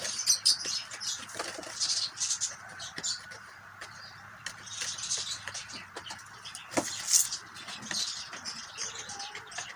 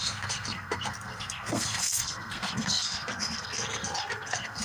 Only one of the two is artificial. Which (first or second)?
second